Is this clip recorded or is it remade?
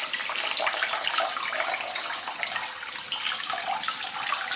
recorded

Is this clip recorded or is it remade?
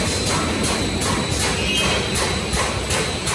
recorded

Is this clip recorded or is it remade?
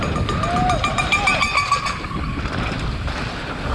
recorded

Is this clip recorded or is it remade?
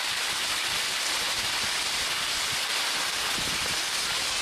recorded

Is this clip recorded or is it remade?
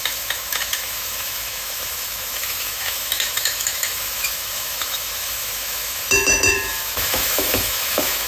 remade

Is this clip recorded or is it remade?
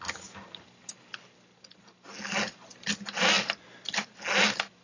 recorded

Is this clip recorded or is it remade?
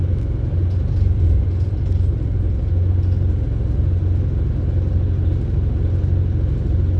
recorded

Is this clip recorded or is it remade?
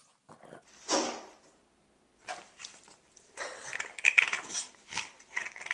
recorded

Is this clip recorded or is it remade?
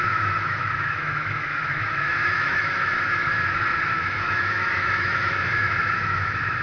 remade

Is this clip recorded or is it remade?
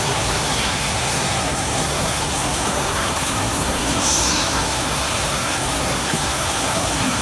remade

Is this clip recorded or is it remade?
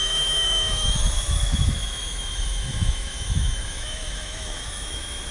remade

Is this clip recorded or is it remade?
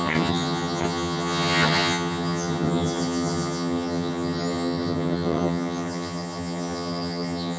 remade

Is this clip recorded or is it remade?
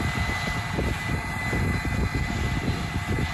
recorded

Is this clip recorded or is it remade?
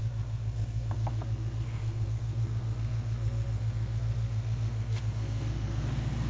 remade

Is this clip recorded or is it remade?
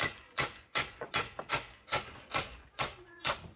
remade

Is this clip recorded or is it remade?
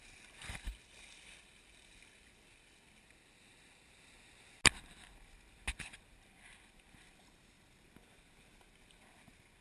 recorded